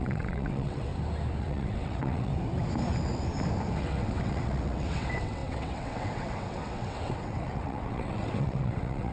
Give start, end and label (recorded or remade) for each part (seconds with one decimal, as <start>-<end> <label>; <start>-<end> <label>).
0.0-0.9 remade; 0.9-1.4 recorded; 1.4-2.3 remade; 2.3-3.8 recorded; 3.8-9.1 remade